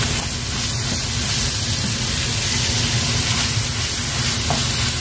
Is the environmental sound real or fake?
real